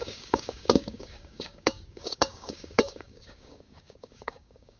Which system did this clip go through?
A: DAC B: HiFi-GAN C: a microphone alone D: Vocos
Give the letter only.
A